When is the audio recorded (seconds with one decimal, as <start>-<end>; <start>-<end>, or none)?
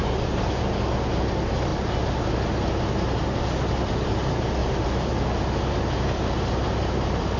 0.6-4.6; 5.1-7.4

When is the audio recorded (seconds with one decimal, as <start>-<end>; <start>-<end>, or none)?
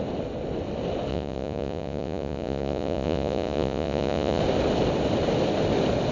0.0-1.1; 4.4-6.1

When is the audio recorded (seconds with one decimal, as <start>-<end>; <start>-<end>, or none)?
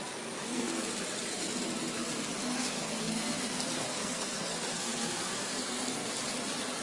0.0-0.4; 0.9-2.6; 6.1-6.8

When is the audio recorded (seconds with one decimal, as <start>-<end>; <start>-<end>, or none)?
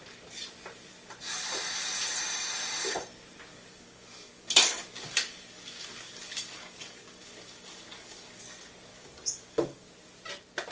0.0-3.5; 8.4-8.9; 9.9-10.7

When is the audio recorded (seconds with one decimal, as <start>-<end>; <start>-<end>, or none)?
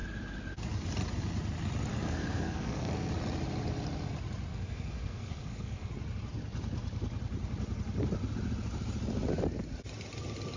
0.0-1.9; 3.1-4.5; 5.9-10.6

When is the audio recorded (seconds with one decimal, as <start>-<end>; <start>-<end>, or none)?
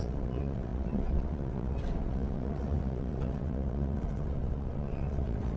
none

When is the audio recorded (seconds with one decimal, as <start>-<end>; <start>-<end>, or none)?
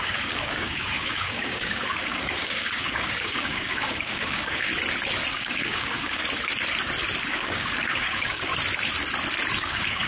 4.7-5.3; 6.2-7.3; 8.5-9.6